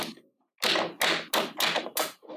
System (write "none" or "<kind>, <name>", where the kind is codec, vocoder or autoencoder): none